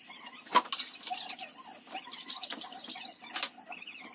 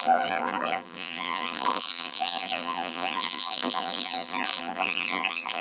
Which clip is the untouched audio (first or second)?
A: first